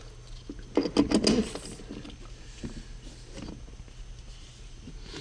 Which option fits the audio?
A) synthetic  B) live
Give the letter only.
B